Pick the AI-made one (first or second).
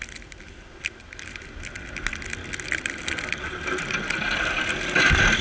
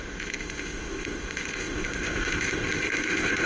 second